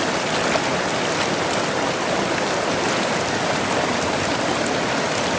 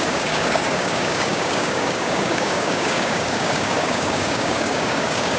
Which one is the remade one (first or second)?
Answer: second